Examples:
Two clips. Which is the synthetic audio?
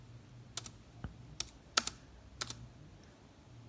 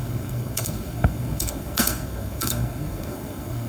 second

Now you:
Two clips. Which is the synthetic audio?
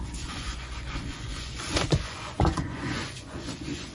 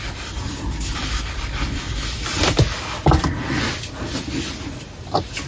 first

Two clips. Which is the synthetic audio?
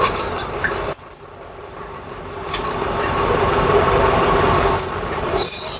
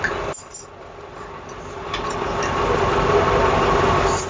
first